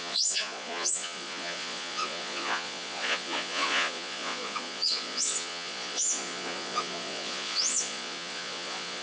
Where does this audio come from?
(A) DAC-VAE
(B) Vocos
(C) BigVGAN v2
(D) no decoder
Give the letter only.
B